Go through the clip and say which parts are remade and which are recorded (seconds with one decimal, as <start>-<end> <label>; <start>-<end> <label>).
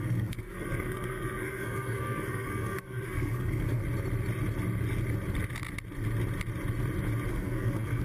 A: 0.0-3.8 remade; 3.8-7.3 recorded; 7.3-8.0 remade